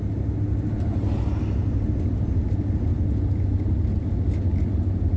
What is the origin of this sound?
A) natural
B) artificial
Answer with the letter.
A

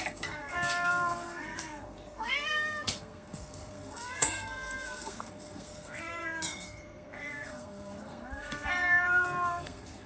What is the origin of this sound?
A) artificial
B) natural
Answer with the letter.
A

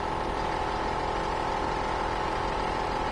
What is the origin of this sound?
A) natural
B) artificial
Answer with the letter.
A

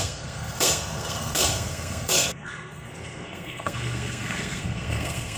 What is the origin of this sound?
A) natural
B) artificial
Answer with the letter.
B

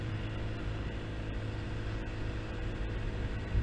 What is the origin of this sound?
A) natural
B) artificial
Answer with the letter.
A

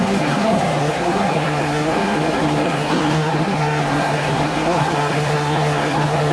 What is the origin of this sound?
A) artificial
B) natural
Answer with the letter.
A